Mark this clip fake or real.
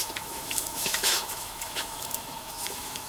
fake